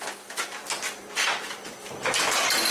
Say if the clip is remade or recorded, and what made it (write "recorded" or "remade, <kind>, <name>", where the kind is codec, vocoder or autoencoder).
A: recorded